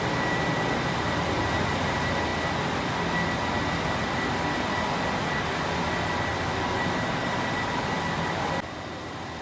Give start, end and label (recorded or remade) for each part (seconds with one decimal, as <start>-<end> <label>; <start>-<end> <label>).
0.0-2.3 remade; 2.3-3.6 recorded; 3.6-5.2 remade; 5.2-7.3 recorded; 7.3-9.4 remade